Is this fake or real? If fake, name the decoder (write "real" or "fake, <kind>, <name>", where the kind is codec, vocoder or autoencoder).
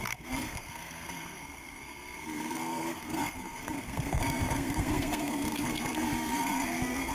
fake, codec, SNAC